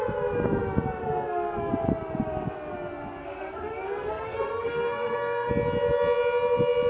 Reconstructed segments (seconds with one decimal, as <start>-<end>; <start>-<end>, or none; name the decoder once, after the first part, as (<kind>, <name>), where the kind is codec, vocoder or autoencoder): 1.0-1.7 (codec, SNAC); 3.2-5.5